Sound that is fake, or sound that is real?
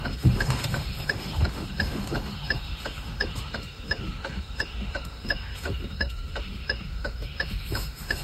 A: fake